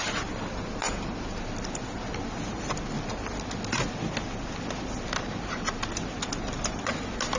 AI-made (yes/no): no